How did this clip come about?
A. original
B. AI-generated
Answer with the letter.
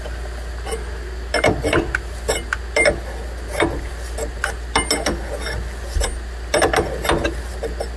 A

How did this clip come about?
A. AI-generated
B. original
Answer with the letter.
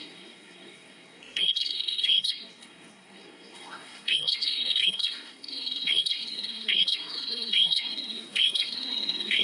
A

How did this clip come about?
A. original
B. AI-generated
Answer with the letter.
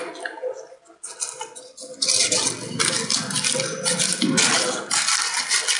A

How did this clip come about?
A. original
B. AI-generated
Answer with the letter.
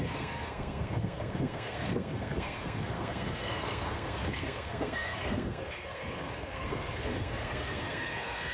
B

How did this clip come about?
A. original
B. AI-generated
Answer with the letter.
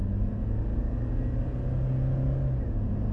A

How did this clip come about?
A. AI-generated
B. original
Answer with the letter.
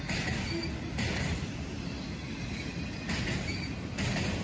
B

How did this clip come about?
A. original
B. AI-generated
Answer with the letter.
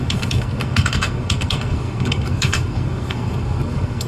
B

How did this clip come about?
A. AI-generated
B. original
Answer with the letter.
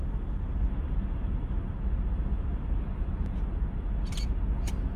B